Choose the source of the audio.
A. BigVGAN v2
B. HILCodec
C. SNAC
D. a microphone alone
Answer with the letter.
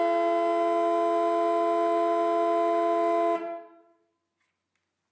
D